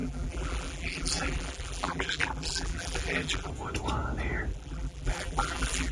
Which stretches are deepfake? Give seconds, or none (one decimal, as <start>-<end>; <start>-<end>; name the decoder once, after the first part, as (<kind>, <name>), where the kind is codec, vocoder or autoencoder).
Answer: 0.0-3.5 (vocoder, BigVGAN v2); 4.5-5.9